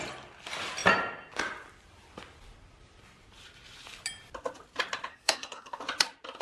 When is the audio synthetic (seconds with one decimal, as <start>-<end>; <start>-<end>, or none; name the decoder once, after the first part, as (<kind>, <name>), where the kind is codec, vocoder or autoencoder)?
5.1-5.8 (codec, SNAC)